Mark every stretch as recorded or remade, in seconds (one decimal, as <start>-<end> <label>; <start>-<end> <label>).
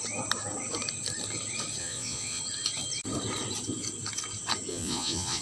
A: 0.0-1.8 recorded; 1.8-2.4 remade; 2.4-4.7 recorded; 4.7-5.4 remade